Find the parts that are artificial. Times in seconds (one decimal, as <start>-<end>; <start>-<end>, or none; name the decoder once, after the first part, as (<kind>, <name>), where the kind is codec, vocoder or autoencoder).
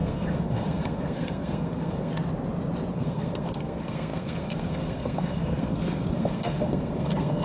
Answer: 0.0-2.1 (codec, SNAC); 2.9-7.4